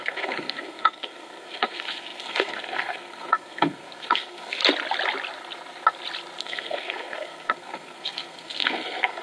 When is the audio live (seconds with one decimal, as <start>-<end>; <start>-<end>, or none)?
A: 4.6-6.4